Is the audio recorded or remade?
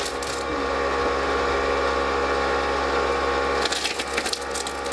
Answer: recorded